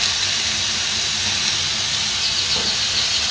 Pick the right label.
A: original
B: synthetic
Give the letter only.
A